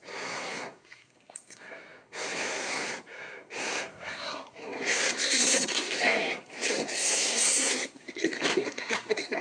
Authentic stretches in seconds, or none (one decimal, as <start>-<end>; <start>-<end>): none